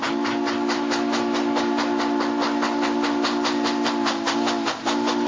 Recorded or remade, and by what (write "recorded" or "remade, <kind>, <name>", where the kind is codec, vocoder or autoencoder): recorded